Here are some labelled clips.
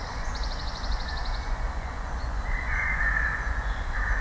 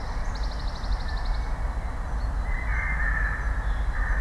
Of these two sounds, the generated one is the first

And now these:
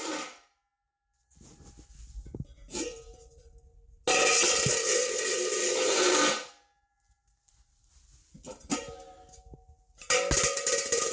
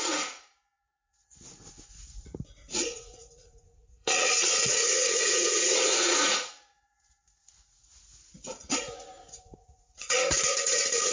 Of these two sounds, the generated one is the second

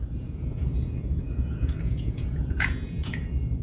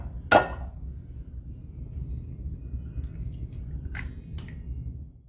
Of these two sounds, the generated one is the first